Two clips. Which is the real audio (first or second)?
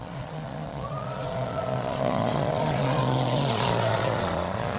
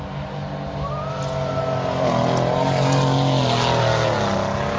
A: second